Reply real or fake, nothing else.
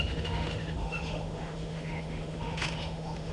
fake